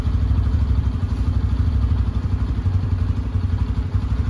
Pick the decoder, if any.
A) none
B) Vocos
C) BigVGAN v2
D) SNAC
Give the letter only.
C